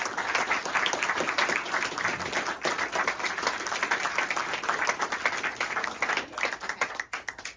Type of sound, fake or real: real